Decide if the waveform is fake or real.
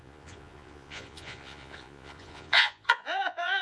fake